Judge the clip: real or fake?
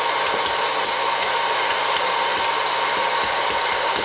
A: real